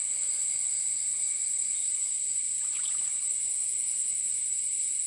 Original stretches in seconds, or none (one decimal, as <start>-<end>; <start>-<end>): 0.0-1.4; 3.7-4.3